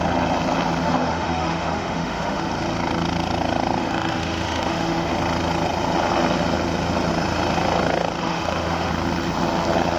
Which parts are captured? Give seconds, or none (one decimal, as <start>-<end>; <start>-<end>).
0.0-0.8; 2.5-3.8; 5.1-8.2; 8.9-10.0